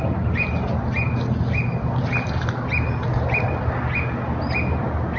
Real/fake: real